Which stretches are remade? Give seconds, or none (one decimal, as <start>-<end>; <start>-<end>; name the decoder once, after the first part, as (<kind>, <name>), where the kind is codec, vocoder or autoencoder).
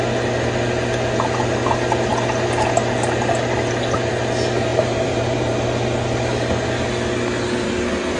4.7-5.5 (vocoder, BigVGAN v2)